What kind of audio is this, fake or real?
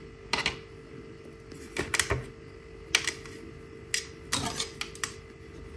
real